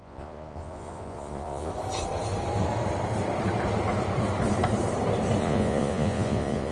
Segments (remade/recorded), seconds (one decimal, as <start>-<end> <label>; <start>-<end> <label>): 0.0-1.7 remade; 1.7-5.4 recorded; 5.4-6.7 remade